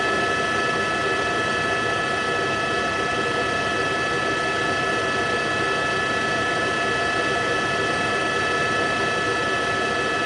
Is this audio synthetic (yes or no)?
no